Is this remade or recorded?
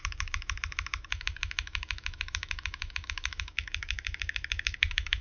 remade